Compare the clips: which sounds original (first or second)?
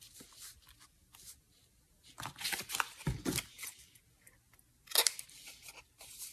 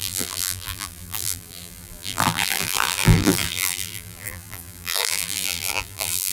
first